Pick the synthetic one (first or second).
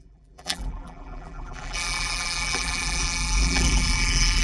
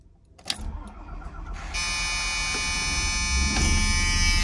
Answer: first